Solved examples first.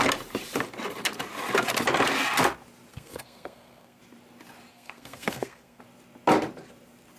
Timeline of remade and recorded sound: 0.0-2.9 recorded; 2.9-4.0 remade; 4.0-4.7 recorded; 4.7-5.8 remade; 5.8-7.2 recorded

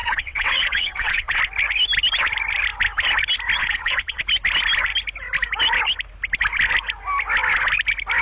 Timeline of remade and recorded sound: 0.0-1.4 remade; 1.4-3.6 recorded; 3.6-4.2 remade; 4.2-8.2 recorded

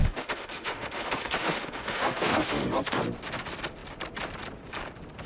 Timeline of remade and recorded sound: 0.0-3.0 remade; 3.0-5.3 recorded

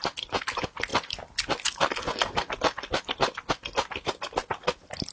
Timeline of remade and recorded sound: 0.0-5.1 recorded

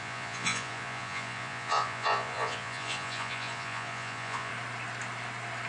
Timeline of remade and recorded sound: 0.0-4.5 remade; 4.5-5.7 recorded

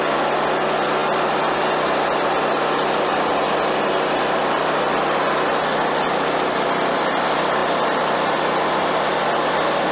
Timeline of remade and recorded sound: 0.0-9.9 recorded